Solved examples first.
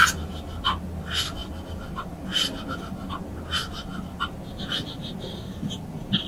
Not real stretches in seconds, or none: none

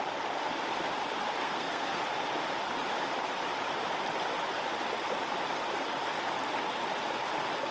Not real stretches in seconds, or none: 1.4-2.0 (codec, SNAC)